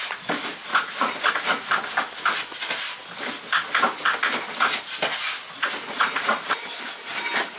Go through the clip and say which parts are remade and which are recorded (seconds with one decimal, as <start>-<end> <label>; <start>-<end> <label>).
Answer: 0.0-0.7 recorded; 0.7-1.3 remade; 1.3-5.4 recorded; 5.4-6.6 remade; 6.6-7.6 recorded

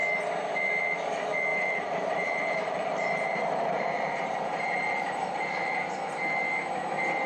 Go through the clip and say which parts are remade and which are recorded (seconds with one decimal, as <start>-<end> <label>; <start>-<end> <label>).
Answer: 0.0-1.5 recorded; 1.5-5.9 remade; 5.9-7.3 recorded

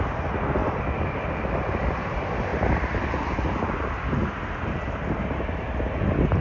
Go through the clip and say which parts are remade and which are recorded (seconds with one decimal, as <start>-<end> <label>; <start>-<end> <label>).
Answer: 0.0-0.6 recorded; 0.6-1.6 remade; 1.6-2.5 recorded; 2.5-3.1 remade; 3.1-6.4 recorded

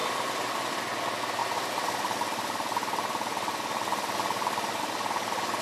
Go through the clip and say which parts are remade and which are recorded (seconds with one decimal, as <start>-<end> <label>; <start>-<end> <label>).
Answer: 0.0-1.4 recorded; 1.4-4.8 remade; 4.8-5.6 recorded

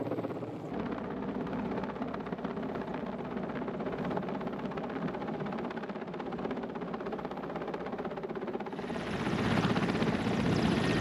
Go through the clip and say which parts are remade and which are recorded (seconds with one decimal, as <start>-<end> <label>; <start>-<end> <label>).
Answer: 0.0-5.2 recorded; 5.2-8.8 remade; 8.8-11.0 recorded